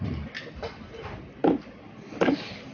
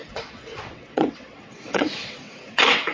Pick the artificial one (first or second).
second